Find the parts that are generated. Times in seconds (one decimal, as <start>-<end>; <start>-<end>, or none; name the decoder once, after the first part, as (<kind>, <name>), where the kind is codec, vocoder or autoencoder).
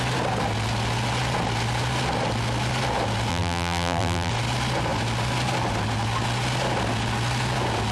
3.3-4.3 (vocoder, BigVGAN v2)